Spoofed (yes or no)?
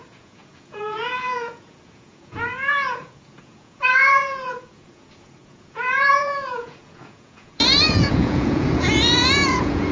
yes